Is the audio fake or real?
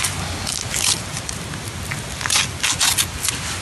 real